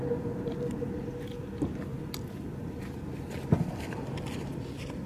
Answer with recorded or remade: recorded